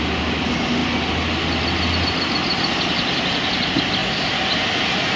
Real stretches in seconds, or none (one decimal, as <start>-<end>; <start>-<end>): 0.0-5.2